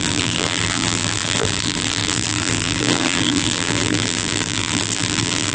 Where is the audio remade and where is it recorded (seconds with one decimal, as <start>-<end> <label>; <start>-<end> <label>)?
0.0-5.5 remade

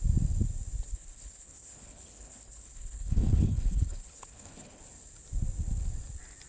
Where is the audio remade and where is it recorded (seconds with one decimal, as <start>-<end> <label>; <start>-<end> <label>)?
0.0-0.9 recorded; 0.9-4.8 remade; 4.8-6.5 recorded

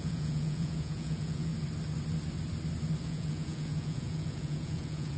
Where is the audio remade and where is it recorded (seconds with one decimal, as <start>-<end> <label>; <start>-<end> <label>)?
0.0-1.5 remade; 1.5-3.0 recorded; 3.0-5.2 remade

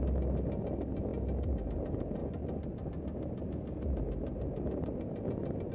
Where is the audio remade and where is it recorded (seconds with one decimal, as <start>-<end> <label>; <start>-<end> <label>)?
0.0-5.7 recorded

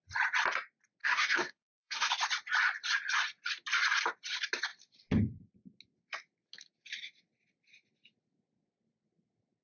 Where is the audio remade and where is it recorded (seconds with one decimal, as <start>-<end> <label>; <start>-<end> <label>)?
0.0-1.0 recorded; 1.0-2.1 remade; 2.1-9.6 recorded

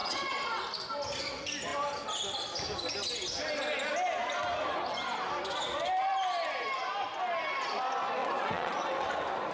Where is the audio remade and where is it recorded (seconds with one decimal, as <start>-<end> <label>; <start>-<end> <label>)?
0.0-0.6 remade; 0.6-8.2 recorded; 8.2-9.1 remade; 9.1-9.5 recorded

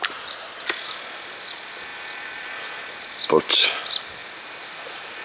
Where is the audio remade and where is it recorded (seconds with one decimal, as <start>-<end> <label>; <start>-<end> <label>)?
0.0-1.9 recorded; 1.9-3.8 remade; 3.8-5.2 recorded

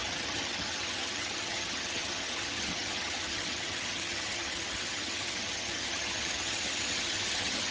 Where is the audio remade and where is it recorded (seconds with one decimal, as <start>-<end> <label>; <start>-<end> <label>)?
0.0-7.7 remade